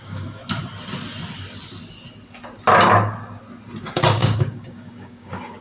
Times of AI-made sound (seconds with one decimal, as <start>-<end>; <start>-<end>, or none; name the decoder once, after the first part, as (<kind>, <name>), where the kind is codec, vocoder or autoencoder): 0.0-0.4 (codec, DAC); 3.8-5.6